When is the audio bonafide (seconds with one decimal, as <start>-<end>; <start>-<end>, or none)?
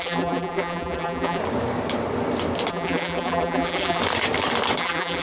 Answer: 1.4-2.7; 4.0-4.8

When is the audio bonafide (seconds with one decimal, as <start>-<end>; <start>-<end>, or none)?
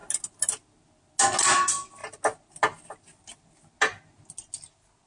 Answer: 0.0-5.1